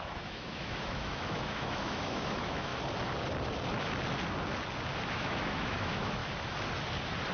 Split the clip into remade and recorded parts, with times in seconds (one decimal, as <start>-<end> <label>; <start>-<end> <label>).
0.0-2.7 remade; 2.7-5.1 recorded; 5.1-6.2 remade; 6.2-7.3 recorded